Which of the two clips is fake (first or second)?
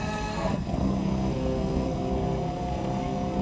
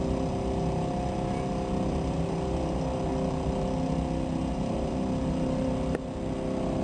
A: first